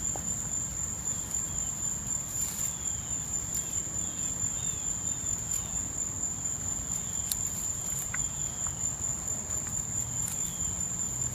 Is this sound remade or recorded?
recorded